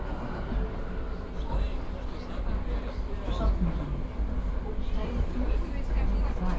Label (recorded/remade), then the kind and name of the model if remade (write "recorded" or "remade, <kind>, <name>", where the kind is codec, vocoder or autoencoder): recorded